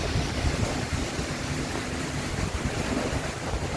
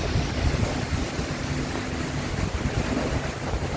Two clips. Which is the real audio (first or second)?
second